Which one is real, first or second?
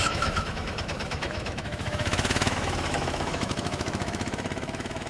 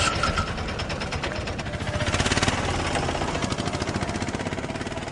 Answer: second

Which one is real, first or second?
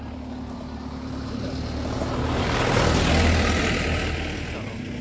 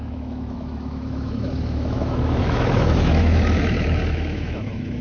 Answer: first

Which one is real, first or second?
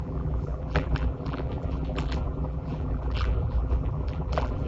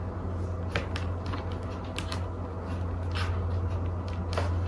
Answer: second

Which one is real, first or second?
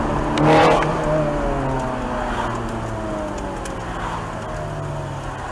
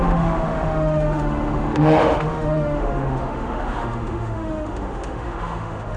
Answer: first